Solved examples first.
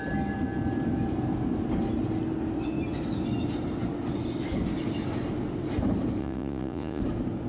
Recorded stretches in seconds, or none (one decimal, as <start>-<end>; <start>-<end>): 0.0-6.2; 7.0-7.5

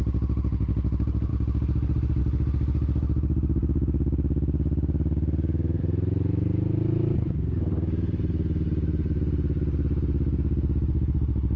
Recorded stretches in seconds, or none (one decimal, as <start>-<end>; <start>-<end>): 0.0-11.6

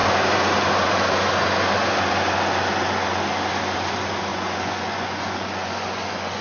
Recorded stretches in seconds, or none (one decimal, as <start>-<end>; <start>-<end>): 0.0-4.3

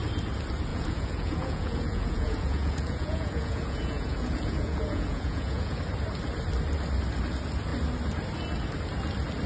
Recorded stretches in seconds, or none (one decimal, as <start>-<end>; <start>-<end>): 0.0-0.7; 5.8-9.5